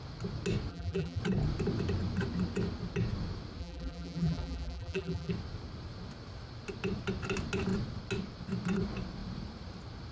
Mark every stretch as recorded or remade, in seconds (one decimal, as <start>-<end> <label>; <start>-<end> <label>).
0.0-0.7 recorded; 0.7-1.2 remade; 1.2-3.6 recorded; 3.6-5.3 remade; 5.3-10.1 recorded